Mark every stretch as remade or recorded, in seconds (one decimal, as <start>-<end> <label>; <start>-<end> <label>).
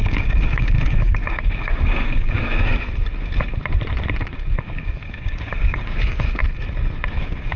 0.0-2.7 remade; 2.7-4.6 recorded; 4.6-6.4 remade; 6.4-7.1 recorded; 7.1-7.6 remade